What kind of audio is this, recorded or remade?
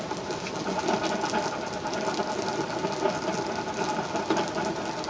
recorded